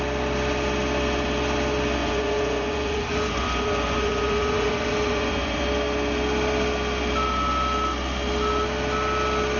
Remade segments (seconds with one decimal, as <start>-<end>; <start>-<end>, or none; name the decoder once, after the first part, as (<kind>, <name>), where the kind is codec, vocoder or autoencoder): 2.0-5.6 (vocoder, Vocos)